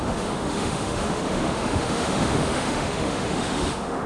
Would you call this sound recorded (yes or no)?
no